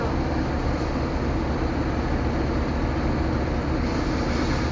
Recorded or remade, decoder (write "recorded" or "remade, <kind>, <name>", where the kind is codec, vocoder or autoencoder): recorded